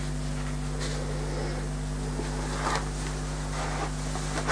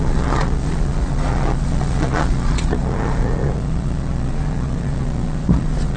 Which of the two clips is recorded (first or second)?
first